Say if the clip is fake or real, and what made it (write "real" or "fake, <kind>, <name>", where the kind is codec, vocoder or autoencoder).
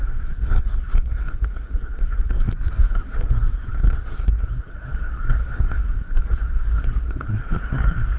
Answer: fake, codec, SNAC